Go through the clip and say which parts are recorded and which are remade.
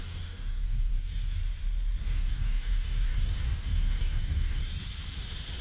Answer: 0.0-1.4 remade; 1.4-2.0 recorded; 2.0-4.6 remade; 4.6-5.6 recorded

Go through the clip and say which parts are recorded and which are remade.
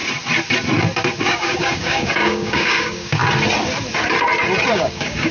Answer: 0.0-1.2 recorded; 1.2-3.2 remade; 3.2-4.7 recorded; 4.7-5.3 remade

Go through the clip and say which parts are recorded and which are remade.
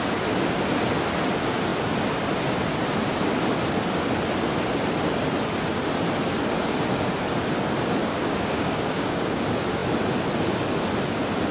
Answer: 0.0-8.0 recorded; 8.0-9.4 remade; 9.4-11.5 recorded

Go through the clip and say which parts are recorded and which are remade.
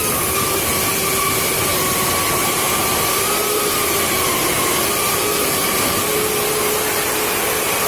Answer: 0.0-7.9 recorded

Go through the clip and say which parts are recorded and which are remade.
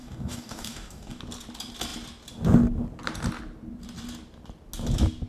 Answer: 0.0-1.2 remade; 1.2-5.3 recorded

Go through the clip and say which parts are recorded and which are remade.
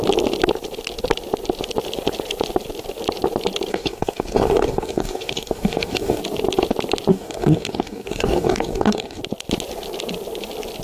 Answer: 0.0-3.7 recorded; 3.7-6.2 remade; 6.2-7.1 recorded; 7.1-9.2 remade; 9.2-10.8 recorded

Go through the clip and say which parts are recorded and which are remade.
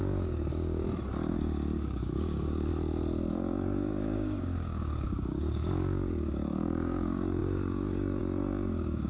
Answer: 0.0-0.8 remade; 0.8-1.3 recorded; 1.3-2.7 remade; 2.7-3.3 recorded; 3.3-9.1 remade